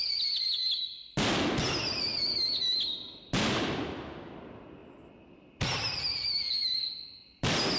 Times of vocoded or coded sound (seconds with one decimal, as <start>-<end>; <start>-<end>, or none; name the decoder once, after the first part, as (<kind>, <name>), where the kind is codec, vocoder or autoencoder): none